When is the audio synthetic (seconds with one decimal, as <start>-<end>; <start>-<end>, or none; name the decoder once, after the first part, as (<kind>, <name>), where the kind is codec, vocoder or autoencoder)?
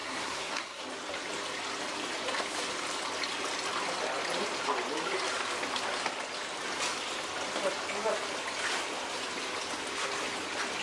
0.0-0.8 (codec, SNAC)